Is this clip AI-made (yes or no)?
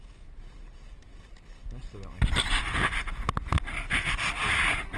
no